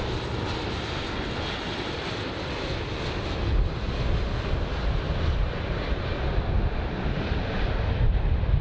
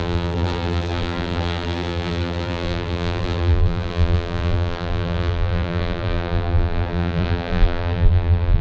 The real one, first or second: first